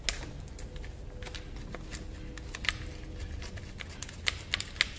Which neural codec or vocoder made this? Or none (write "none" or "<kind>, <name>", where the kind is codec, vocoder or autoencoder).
none